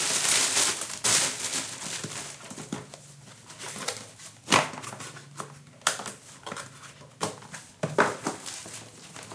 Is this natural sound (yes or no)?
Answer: yes